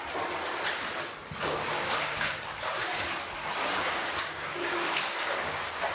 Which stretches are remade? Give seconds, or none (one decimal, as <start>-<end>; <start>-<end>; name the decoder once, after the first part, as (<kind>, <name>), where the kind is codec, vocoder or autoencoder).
1.4-2.7 (codec, DAC); 3.4-5.9